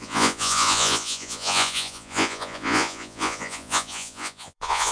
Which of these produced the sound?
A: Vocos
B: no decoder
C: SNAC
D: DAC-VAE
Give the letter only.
A